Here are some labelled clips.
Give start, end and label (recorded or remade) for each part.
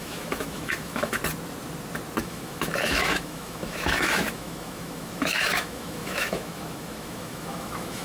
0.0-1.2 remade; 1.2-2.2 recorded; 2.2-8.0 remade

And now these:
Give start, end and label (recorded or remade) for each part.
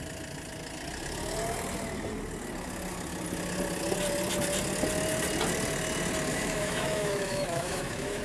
0.0-6.3 recorded; 6.3-8.2 remade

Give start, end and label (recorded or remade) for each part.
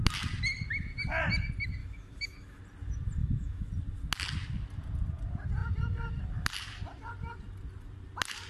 0.0-1.8 recorded; 1.8-2.6 remade; 2.6-3.2 recorded; 3.2-3.7 remade; 3.7-8.5 recorded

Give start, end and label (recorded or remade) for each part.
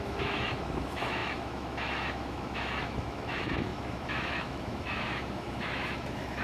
0.0-6.4 remade